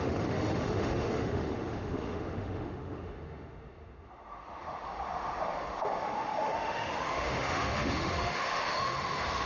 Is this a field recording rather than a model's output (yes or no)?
no